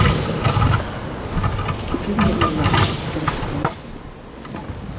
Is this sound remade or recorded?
recorded